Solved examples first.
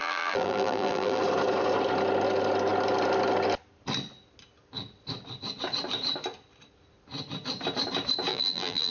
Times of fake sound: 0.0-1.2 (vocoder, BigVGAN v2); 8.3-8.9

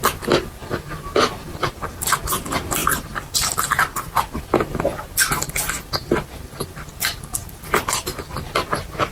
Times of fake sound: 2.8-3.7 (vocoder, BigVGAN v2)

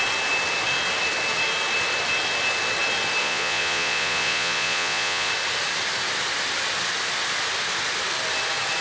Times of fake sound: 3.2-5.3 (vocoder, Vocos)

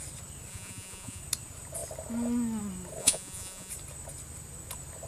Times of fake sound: 0.5-1.2 (vocoder, Vocos); 3.0-3.7

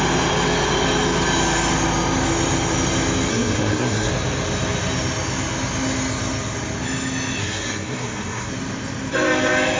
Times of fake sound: 3.3-4.1 (codec, SNAC); 7.4-8.5

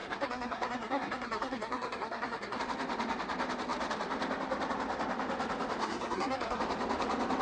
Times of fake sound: 0.0-2.6 (codec, SNAC); 5.8-6.6

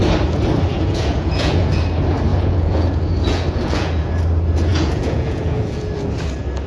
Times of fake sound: 0.7-1.8 (vocoder, Vocos); 2.3-4.2; 4.7-6.1